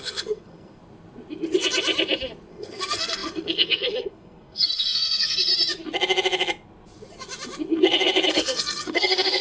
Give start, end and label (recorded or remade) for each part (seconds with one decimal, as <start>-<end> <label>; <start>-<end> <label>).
0.0-0.8 remade; 0.8-2.5 recorded; 2.5-5.5 remade; 5.5-8.3 recorded; 8.3-9.4 remade